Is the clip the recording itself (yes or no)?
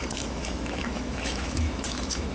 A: no